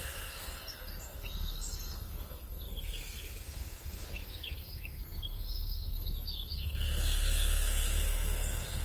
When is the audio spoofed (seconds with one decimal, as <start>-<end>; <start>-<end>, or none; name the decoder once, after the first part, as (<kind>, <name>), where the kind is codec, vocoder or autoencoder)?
0.0-8.8 (codec, SNAC)